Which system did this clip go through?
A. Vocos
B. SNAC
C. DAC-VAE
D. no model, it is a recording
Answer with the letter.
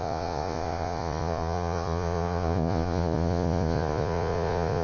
A